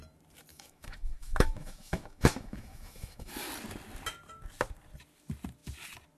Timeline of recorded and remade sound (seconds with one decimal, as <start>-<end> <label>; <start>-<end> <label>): 0.0-0.5 recorded; 0.5-3.3 remade; 3.3-6.2 recorded